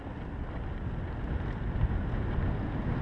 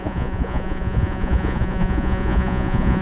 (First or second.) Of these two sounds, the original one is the first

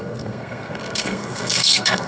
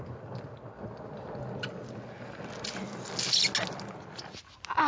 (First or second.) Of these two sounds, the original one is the second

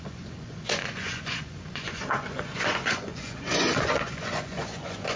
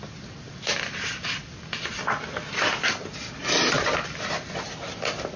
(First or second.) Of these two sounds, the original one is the second